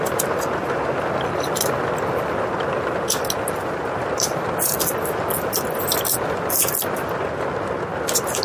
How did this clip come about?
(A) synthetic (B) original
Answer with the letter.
B